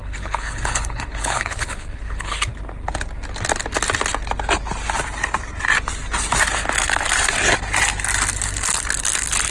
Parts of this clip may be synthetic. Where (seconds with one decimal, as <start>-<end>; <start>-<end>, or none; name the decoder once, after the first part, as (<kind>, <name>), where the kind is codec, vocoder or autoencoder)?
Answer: 0.0-2.5 (codec, HILCodec)